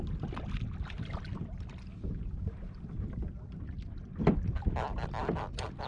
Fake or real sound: real